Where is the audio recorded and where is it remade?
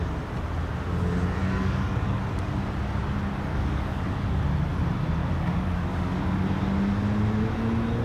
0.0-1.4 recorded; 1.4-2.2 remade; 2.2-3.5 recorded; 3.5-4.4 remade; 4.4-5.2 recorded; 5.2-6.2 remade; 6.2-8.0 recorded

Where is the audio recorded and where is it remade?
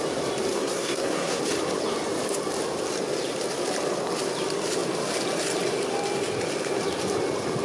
0.0-0.5 recorded; 0.5-1.4 remade; 1.4-7.6 recorded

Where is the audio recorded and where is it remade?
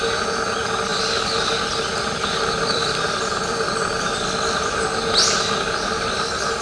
0.0-0.9 recorded; 0.9-4.9 remade; 4.9-6.6 recorded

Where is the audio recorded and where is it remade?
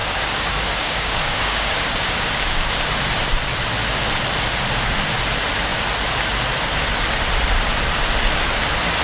0.0-2.7 remade; 2.7-9.0 recorded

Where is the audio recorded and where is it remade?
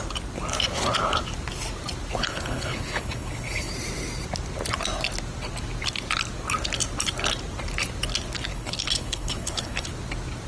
0.0-2.2 recorded; 2.2-3.7 remade; 3.7-8.5 recorded; 8.5-9.9 remade; 9.9-10.5 recorded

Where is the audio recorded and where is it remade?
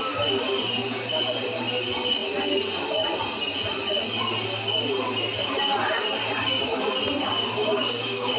0.0-7.6 recorded; 7.6-8.4 remade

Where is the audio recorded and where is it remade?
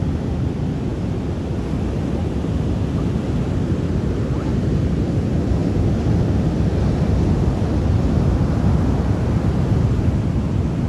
0.0-10.9 recorded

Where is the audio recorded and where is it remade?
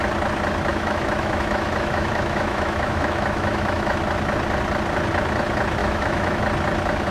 0.0-0.7 recorded; 0.7-4.0 remade; 4.0-5.8 recorded; 5.8-6.4 remade; 6.4-7.1 recorded